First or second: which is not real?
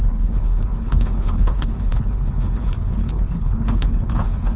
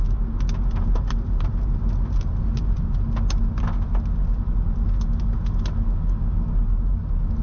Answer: first